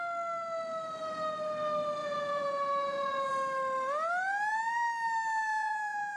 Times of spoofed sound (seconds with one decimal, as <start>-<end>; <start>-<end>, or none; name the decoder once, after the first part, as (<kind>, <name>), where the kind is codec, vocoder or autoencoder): 2.0-3.3 (vocoder, Vocos); 5.5-6.2